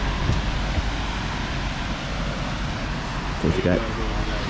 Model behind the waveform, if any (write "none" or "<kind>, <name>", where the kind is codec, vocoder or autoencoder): none